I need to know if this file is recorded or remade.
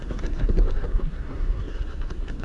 remade